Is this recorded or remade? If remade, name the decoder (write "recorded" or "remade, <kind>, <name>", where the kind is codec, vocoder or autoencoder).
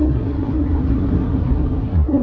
remade, codec, SNAC